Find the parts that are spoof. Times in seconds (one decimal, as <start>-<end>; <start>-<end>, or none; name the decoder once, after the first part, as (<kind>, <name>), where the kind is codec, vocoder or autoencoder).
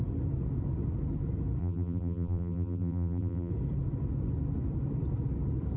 1.6-3.5 (vocoder, BigVGAN v2)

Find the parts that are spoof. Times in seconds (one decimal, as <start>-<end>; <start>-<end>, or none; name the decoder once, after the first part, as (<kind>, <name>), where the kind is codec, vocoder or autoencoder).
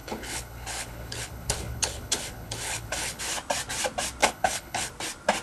0.0-3.2 (codec, HILCodec); 4.2-4.9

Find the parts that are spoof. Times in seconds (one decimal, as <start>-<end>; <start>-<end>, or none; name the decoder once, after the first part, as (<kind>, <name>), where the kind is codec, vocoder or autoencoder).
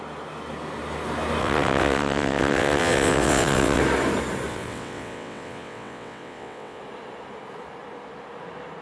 1.4-3.8 (vocoder, WaveNeXt); 4.5-6.8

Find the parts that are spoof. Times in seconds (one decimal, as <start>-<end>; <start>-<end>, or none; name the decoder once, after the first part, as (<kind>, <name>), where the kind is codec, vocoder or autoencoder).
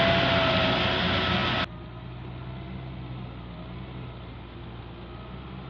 none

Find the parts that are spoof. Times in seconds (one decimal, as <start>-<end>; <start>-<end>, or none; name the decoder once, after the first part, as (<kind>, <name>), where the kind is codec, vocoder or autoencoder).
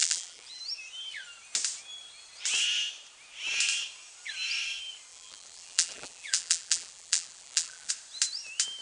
0.0-0.6 (vocoder, BigVGAN v2); 5.1-7.9